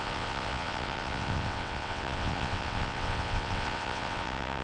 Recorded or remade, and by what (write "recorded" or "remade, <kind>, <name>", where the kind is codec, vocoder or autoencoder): remade, vocoder, WaveNeXt